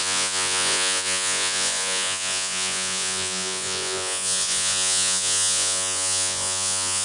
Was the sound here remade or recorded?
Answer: remade